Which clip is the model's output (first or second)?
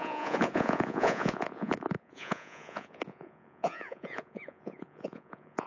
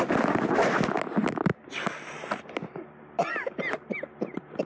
first